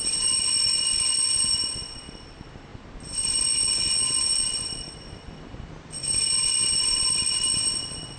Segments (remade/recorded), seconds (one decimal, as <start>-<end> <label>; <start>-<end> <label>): 0.0-6.6 recorded; 6.6-7.5 remade; 7.5-8.2 recorded